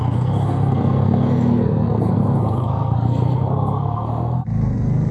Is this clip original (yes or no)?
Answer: no